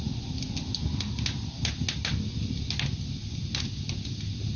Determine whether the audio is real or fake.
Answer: real